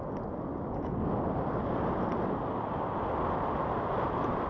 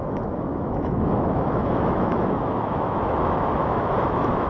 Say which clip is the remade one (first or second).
second